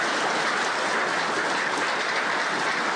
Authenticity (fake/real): real